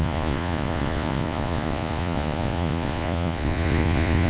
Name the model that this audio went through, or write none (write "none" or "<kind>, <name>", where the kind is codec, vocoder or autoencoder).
vocoder, Vocos